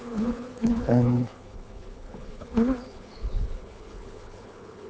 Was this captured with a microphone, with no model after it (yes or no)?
no